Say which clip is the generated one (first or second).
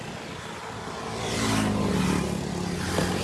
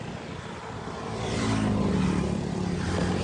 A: second